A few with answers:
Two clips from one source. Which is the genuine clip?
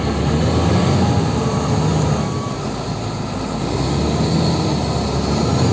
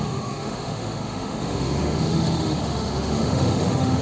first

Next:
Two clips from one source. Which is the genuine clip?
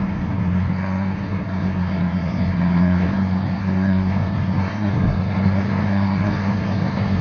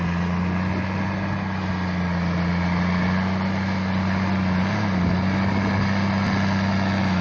second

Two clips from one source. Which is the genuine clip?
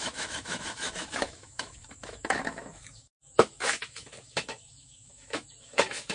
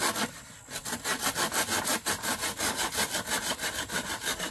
second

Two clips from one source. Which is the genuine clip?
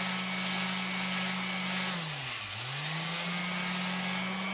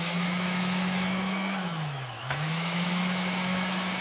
first